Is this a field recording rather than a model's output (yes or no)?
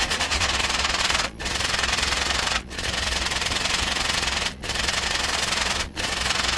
no